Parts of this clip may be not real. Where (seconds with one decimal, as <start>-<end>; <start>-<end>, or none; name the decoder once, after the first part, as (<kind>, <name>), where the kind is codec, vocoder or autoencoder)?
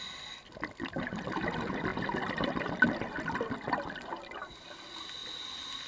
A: none